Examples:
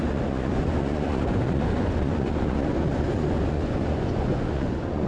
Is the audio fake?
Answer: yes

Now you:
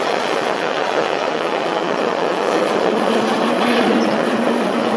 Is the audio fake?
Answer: yes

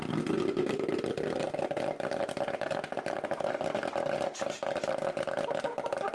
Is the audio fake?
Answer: no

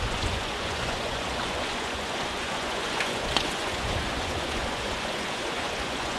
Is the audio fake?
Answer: yes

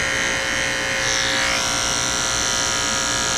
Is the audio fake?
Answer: no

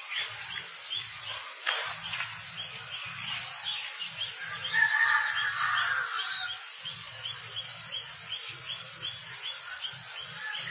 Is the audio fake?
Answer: no